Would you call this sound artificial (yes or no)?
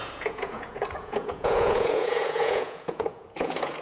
yes